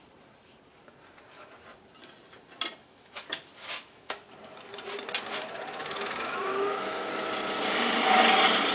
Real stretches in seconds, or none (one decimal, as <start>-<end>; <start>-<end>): 0.0-2.8; 4.4-5.8; 7.1-8.7